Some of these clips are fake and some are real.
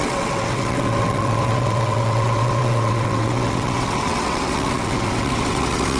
fake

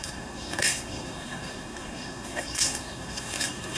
fake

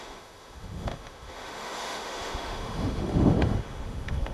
fake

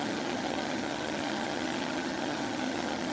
fake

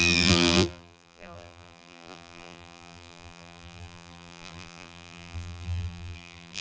fake